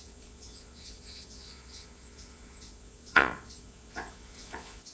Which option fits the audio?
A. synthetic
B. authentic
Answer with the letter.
A